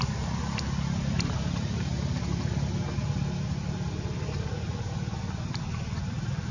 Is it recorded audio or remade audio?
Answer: recorded